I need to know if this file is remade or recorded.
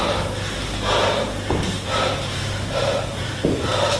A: recorded